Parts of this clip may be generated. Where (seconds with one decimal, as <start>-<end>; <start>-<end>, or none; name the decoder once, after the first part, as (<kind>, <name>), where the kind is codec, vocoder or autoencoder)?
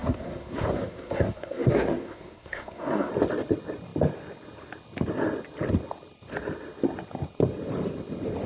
0.0-3.1 (codec, SNAC)